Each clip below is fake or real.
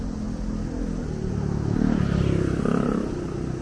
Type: real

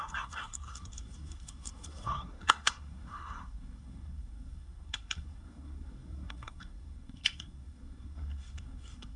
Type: fake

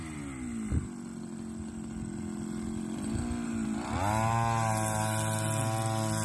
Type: real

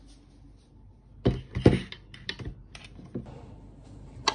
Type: real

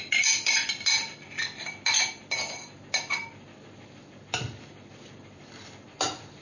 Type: real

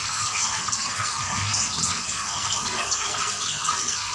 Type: fake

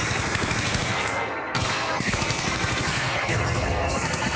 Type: fake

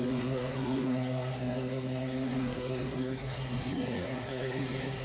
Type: fake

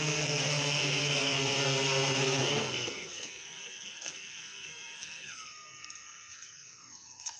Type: fake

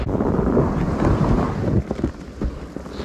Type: real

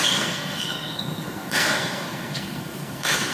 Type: fake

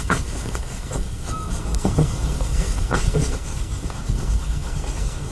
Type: fake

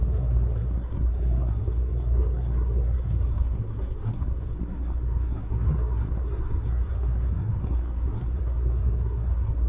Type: fake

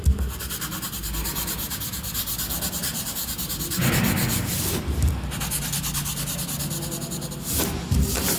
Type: real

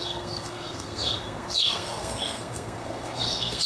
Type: fake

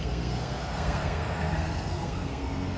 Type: fake